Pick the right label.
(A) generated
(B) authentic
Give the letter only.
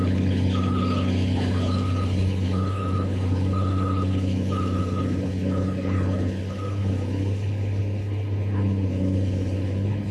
A